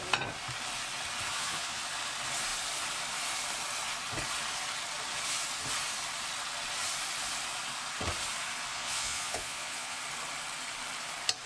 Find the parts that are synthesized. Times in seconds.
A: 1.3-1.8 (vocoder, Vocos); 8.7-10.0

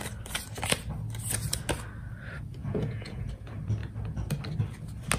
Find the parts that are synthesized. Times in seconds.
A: 2.6-3.3 (vocoder, Vocos)

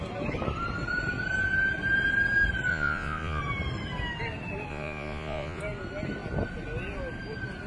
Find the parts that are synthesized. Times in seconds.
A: 2.7-3.4 (vocoder, Vocos); 4.7-5.6

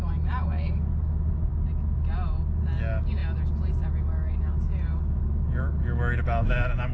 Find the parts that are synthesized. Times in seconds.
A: none